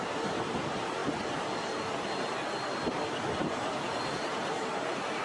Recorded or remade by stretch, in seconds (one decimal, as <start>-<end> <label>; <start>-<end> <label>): 0.0-1.0 remade; 1.0-3.4 recorded; 3.4-5.2 remade